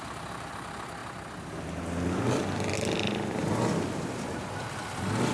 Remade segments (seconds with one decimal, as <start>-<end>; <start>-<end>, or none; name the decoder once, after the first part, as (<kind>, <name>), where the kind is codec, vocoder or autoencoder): none